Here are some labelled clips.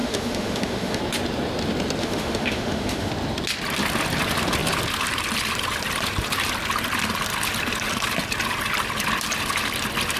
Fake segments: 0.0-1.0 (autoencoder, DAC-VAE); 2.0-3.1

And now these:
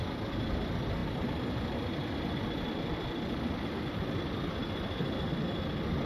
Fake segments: none

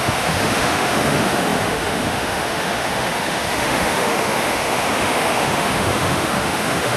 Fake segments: 0.0-7.0 (autoencoder, DAC-VAE)

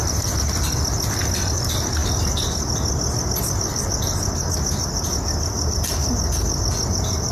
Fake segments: none

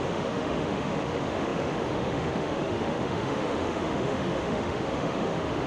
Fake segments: 0.0-5.7 (autoencoder, DAC-VAE)

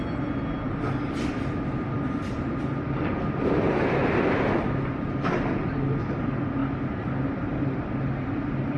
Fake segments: none